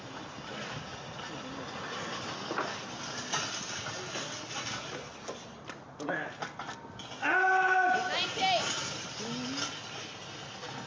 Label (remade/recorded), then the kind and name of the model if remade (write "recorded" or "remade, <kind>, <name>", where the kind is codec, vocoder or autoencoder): recorded